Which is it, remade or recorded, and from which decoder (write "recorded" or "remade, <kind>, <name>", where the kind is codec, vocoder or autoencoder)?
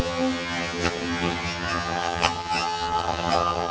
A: remade, vocoder, HiFi-GAN